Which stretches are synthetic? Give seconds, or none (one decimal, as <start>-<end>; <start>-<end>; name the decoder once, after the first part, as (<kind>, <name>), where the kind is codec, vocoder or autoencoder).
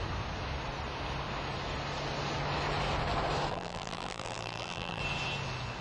3.5-5.0 (vocoder, BigVGAN v2)